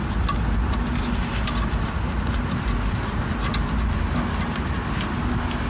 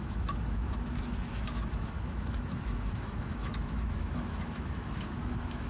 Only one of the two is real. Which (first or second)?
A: first